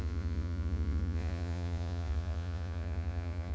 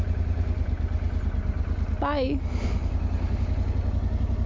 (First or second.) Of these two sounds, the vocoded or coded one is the first